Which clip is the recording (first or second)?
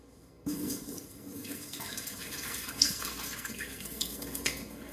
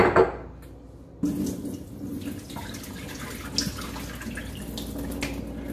second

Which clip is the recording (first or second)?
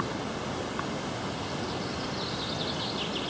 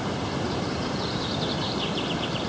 first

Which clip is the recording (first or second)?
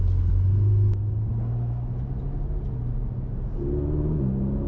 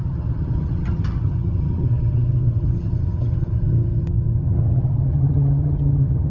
first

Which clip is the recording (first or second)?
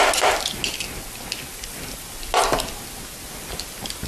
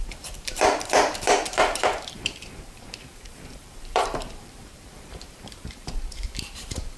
first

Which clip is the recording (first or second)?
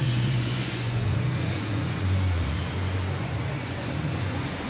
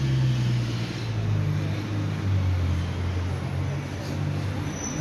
second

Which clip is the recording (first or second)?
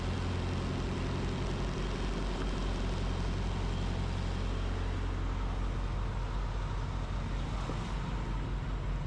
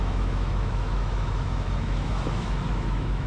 first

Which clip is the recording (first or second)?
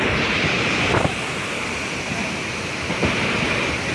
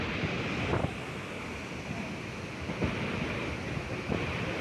second